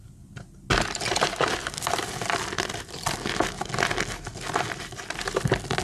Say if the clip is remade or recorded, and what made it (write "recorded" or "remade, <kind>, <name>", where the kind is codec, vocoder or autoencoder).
recorded